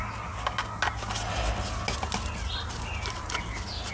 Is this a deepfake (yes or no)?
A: no